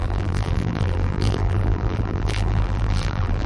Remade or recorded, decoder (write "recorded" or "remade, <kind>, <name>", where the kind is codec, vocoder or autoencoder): remade, vocoder, BigVGAN v2